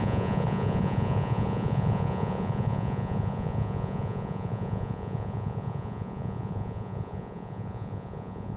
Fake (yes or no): yes